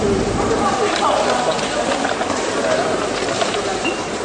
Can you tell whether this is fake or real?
fake